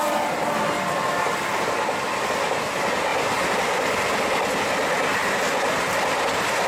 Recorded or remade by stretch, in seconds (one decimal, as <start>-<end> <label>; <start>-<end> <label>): 0.0-3.1 recorded; 3.1-4.7 remade; 4.7-6.7 recorded